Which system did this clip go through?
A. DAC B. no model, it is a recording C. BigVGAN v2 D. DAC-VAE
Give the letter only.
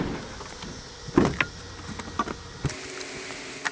B